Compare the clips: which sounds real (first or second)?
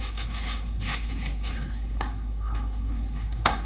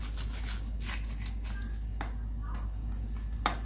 second